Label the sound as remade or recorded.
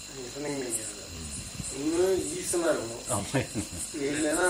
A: remade